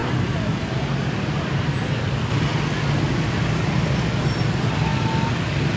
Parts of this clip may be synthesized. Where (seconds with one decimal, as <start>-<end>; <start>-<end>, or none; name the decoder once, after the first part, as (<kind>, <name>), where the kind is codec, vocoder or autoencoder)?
none